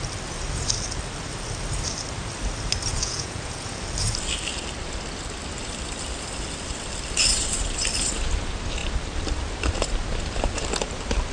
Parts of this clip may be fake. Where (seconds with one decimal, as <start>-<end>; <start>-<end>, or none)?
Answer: 2.9-3.8